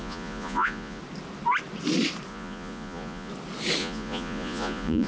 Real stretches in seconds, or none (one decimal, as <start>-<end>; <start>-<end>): 1.0-2.3; 3.3-3.8